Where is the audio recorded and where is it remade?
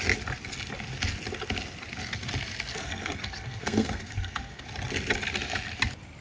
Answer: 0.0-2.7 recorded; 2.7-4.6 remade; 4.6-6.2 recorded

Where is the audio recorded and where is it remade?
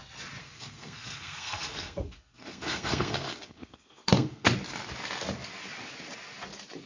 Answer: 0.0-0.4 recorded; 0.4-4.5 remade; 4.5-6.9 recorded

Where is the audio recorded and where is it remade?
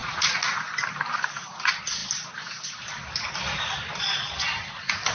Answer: 0.0-0.6 remade; 0.6-5.1 recorded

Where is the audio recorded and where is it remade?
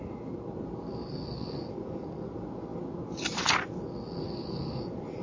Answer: 0.0-5.2 recorded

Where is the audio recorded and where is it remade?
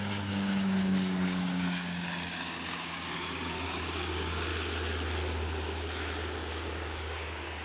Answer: 0.0-4.5 remade; 4.5-6.5 recorded; 6.5-7.6 remade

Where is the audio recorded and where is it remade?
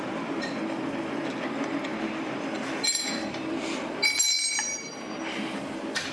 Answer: 0.0-6.1 remade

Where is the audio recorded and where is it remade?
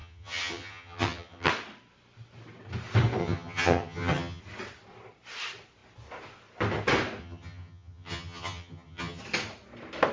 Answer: 0.0-1.5 remade; 1.5-3.2 recorded; 3.2-4.4 remade; 4.4-7.2 recorded; 7.2-9.2 remade; 9.2-10.1 recorded